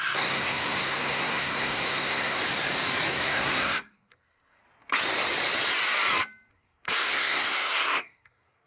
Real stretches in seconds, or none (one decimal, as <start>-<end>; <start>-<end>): 2.4-3.1; 4.6-6.5